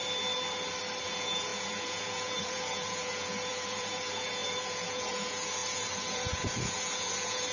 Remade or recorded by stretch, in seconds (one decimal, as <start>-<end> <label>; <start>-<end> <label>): 0.0-1.0 recorded; 1.0-7.5 remade